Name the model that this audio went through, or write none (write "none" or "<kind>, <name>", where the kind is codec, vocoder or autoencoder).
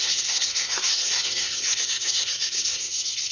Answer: codec, SNAC